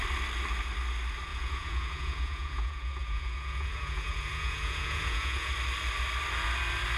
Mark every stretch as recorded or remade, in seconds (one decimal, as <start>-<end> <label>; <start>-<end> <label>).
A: 0.0-1.3 recorded; 1.3-5.5 remade; 5.5-7.0 recorded